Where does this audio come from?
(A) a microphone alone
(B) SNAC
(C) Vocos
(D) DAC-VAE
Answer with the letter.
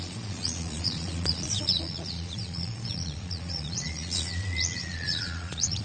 C